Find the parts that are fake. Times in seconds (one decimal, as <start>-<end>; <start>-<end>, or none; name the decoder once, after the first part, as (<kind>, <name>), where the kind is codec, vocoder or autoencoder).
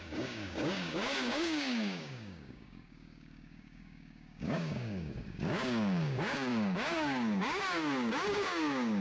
0.0-9.0 (codec, DAC)